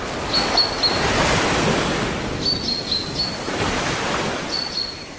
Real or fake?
real